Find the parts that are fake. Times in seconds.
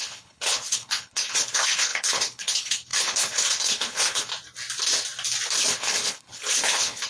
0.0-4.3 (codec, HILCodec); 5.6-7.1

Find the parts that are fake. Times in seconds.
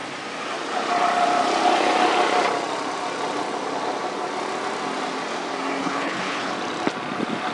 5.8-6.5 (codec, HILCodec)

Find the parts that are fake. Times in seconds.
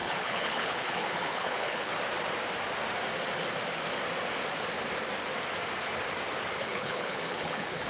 0.0-1.9 (codec, HILCodec); 6.6-7.9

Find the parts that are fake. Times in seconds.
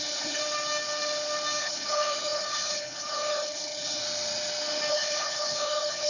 0.0-0.4 (codec, HILCodec); 1.6-4.0; 4.9-6.1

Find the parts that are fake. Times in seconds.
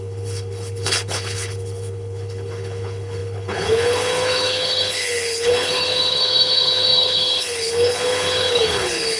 0.0-9.2 (codec, HILCodec)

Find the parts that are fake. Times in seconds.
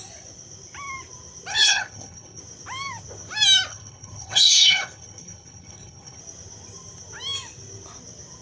1.5-2.4 (codec, HILCodec); 3.7-6.2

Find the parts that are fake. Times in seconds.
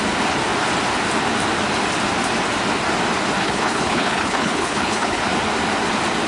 3.4-5.2 (codec, HILCodec)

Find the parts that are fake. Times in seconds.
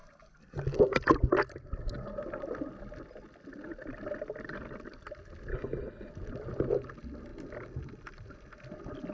5.5-6.1 (codec, HILCodec)